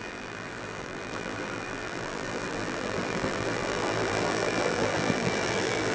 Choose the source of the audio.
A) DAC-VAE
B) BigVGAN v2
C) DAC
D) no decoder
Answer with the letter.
B